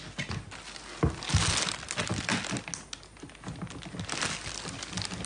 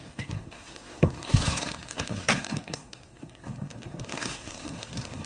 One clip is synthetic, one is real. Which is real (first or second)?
first